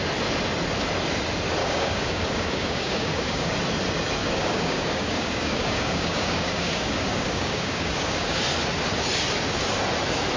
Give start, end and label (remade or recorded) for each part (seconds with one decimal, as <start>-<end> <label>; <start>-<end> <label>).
0.0-1.6 recorded; 1.6-3.5 remade; 3.5-4.2 recorded; 4.2-8.4 remade; 8.4-10.4 recorded